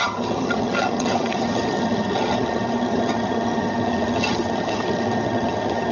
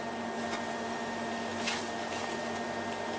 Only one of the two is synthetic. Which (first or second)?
first